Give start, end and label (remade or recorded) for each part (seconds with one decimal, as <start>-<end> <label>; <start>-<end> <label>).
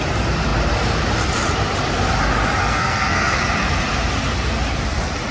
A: 0.0-2.6 recorded; 2.6-3.4 remade; 3.4-5.3 recorded